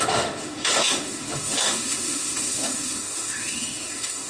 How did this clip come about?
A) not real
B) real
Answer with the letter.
A